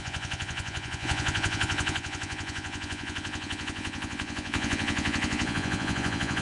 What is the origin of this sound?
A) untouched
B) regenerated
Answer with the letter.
B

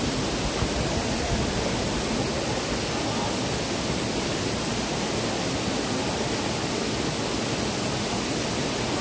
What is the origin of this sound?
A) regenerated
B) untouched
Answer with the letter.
B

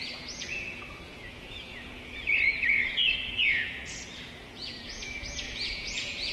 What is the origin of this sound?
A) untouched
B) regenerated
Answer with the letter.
B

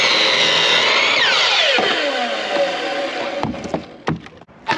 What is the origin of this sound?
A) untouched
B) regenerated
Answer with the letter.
A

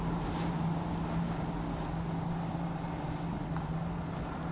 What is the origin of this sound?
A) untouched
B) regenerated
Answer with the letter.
A